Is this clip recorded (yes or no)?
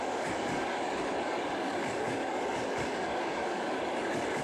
no